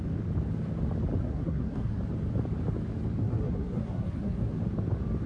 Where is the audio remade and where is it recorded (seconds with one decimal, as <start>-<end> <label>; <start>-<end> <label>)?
0.0-1.2 recorded; 1.2-2.0 remade; 2.0-3.2 recorded; 3.2-4.5 remade; 4.5-5.3 recorded